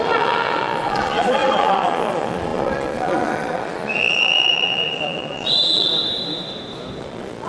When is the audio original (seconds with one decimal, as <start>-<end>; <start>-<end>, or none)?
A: 5.9-7.0